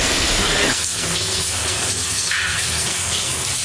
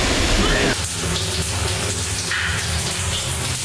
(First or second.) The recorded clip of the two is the second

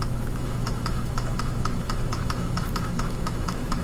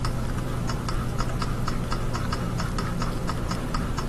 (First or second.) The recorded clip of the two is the second